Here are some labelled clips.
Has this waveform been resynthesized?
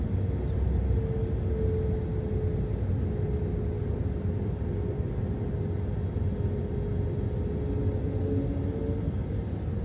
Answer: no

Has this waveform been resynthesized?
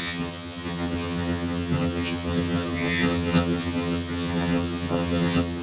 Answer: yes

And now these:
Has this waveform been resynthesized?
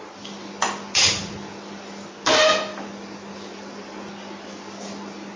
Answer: no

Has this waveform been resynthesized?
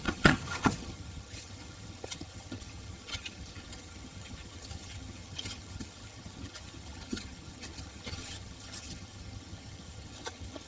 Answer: yes